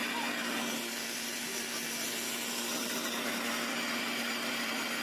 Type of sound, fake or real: real